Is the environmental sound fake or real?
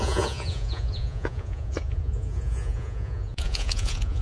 fake